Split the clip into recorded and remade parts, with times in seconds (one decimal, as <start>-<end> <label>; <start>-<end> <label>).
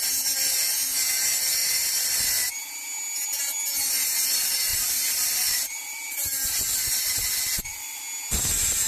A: 0.0-1.6 recorded; 1.6-2.5 remade; 2.5-4.7 recorded; 4.7-8.0 remade; 8.0-8.9 recorded